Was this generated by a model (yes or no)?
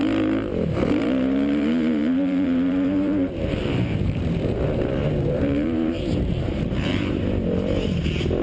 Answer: yes